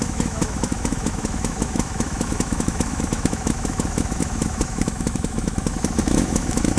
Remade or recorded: remade